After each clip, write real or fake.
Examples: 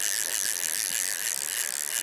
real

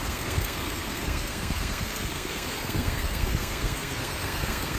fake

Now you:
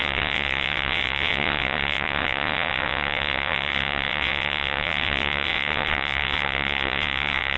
fake